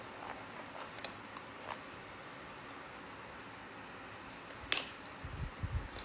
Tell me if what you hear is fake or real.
real